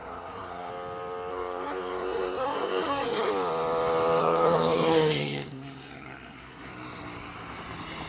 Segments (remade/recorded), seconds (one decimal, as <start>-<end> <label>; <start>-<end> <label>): 0.0-0.7 remade; 0.7-1.3 recorded; 1.3-3.3 remade; 3.3-4.2 recorded; 4.2-6.7 remade; 6.7-8.1 recorded